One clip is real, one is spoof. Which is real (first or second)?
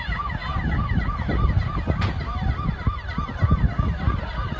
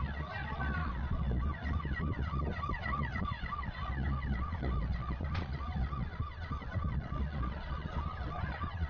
first